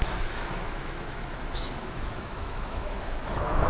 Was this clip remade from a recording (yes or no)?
yes